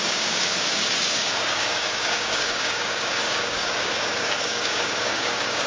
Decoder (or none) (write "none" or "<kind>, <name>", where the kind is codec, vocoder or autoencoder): codec, DAC